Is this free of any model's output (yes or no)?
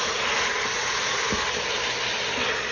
yes